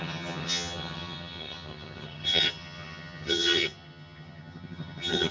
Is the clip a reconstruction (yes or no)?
yes